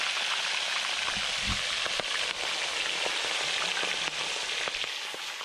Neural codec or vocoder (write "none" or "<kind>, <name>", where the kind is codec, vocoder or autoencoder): none